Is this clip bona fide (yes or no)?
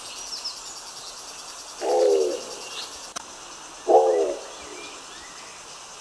yes